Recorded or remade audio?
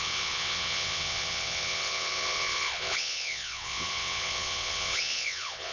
remade